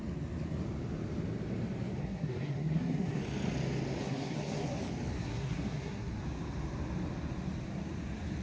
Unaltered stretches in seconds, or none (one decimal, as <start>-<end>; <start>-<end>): 0.0-2.0; 3.2-4.0; 4.8-5.2; 6.2-8.4